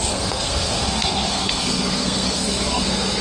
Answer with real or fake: fake